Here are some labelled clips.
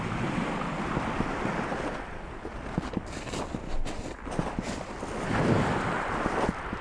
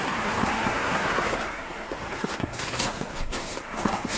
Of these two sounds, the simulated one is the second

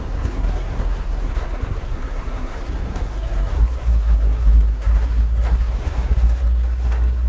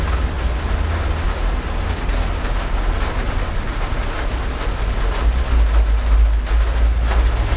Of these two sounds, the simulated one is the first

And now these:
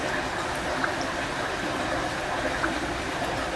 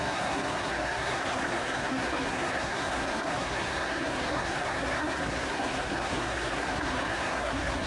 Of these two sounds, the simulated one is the second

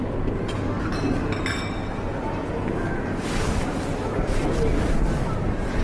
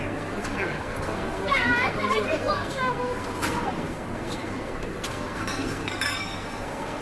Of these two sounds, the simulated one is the second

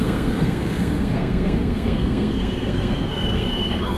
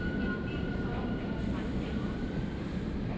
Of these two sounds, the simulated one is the first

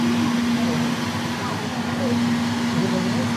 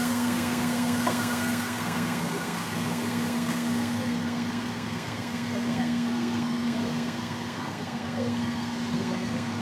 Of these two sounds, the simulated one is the second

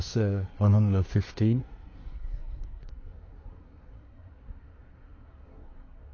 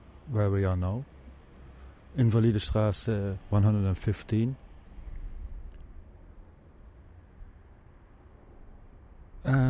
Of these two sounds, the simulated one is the first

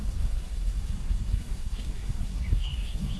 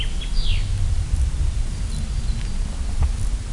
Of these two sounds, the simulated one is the first